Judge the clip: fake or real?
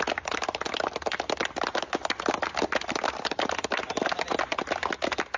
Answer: real